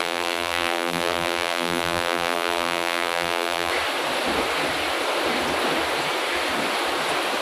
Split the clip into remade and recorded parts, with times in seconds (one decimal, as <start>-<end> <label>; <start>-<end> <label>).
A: 0.0-3.7 remade; 3.7-7.4 recorded